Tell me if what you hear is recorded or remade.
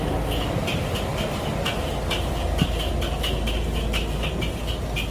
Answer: recorded